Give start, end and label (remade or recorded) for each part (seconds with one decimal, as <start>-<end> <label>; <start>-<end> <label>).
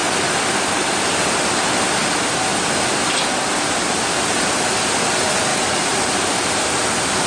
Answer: 0.0-1.7 remade; 1.7-2.5 recorded; 2.5-3.1 remade; 3.1-5.5 recorded; 5.5-6.3 remade; 6.3-7.3 recorded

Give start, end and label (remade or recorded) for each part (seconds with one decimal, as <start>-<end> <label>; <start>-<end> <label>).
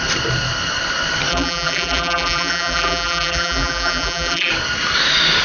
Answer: 0.0-1.3 recorded; 1.3-4.5 remade; 4.5-5.4 recorded